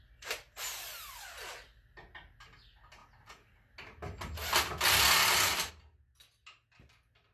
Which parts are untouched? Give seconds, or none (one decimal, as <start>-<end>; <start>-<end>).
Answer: 0.0-7.3